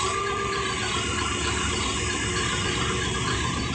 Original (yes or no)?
no